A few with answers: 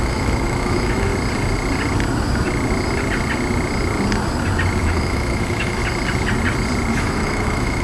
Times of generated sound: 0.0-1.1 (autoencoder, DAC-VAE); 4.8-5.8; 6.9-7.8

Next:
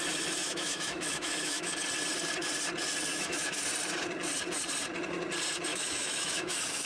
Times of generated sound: 0.4-1.7 (autoencoder, DAC-VAE); 3.1-3.6; 5.7-6.9